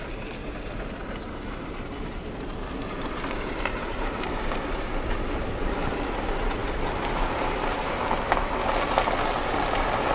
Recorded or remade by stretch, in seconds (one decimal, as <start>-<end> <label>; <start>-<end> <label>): 0.0-0.4 recorded; 0.4-5.2 remade; 5.2-6.6 recorded; 6.6-8.0 remade; 8.0-10.1 recorded